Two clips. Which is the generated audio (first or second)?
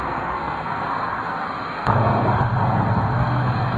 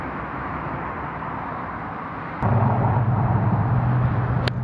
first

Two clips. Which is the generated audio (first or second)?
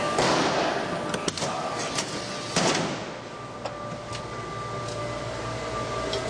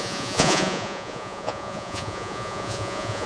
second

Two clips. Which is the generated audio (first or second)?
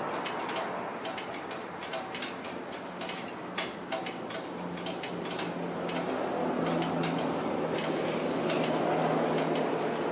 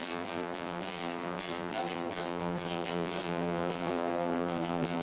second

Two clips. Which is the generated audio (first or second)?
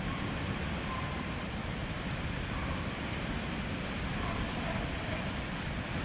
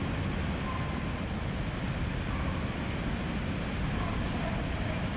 first